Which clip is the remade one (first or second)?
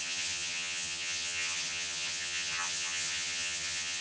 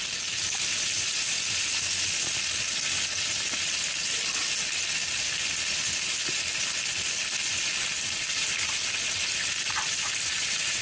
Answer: first